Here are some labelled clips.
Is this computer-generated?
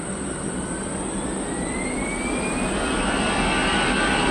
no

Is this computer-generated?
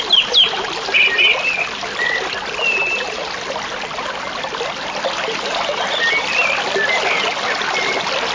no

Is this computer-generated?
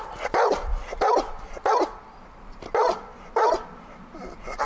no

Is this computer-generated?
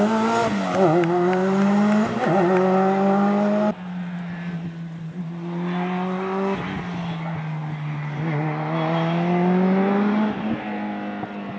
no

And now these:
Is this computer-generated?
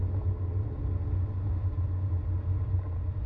no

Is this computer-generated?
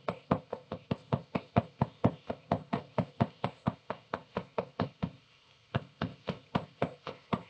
yes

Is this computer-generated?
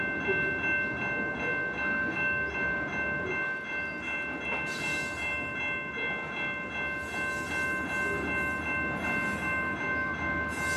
no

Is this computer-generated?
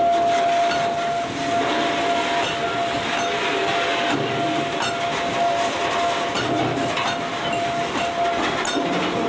no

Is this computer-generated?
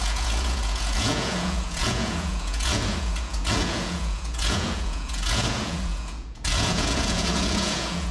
yes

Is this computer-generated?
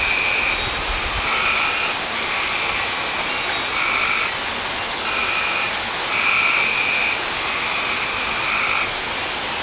no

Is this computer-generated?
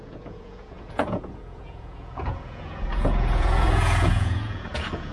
yes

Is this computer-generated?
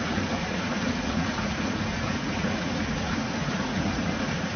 yes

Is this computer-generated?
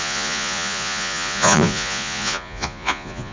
yes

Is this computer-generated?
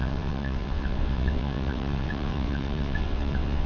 yes